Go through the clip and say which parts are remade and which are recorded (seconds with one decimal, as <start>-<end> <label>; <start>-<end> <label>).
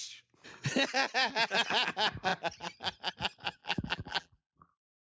0.0-3.6 recorded; 3.6-5.1 remade